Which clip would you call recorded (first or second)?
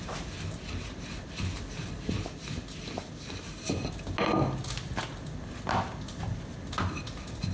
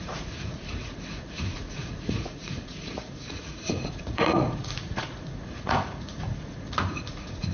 first